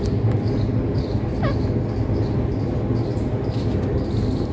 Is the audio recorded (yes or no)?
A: yes